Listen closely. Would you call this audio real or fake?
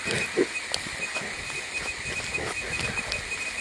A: real